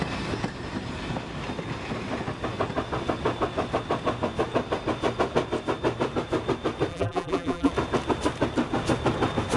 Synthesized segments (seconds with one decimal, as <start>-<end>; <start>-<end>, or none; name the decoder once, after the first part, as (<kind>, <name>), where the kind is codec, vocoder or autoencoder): 6.9-7.7 (vocoder, BigVGAN v2)